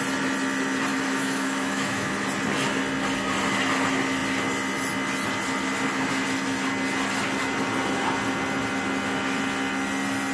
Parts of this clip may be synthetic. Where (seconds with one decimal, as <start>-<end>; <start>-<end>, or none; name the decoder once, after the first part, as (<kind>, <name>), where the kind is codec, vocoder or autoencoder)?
0.9-2.1 (autoencoder, DAC-VAE)